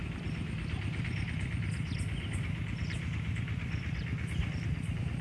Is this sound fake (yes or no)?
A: no